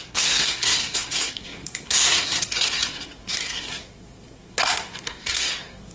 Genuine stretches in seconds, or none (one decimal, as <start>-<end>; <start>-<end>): none